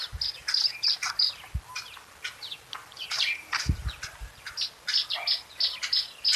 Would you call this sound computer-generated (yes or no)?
no